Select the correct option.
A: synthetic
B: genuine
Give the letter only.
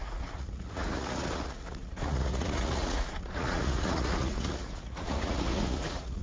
A